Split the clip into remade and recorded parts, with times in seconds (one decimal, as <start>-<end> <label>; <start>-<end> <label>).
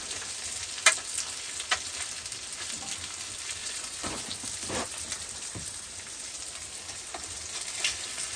0.0-3.6 recorded; 3.6-4.3 remade; 4.3-8.4 recorded